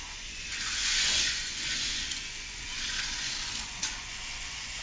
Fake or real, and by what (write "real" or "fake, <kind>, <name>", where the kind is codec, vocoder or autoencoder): fake, vocoder, Vocos